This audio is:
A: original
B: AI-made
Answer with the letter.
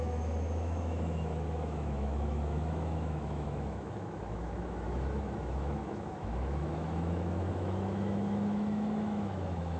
B